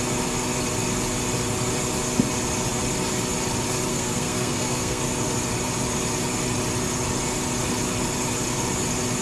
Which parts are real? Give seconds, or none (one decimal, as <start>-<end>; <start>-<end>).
0.0-3.9; 5.0-9.2